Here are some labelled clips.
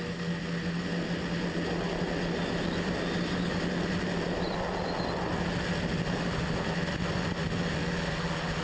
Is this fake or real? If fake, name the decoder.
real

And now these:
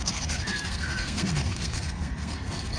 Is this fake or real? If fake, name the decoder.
fake, codec, SNAC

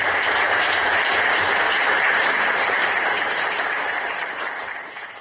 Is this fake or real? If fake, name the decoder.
fake, vocoder, BigVGAN v2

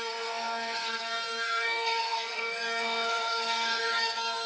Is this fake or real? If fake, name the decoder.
fake, codec, SNAC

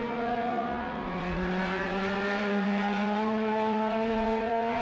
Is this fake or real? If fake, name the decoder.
fake, vocoder, Vocos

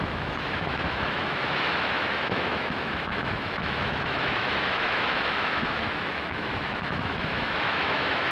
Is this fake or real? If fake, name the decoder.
fake, autoencoder, DAC-VAE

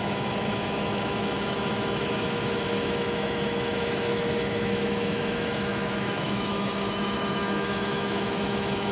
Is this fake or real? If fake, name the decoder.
fake, autoencoder, DAC-VAE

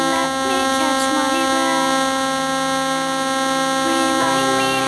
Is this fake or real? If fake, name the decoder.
real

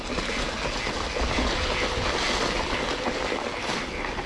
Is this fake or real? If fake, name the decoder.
real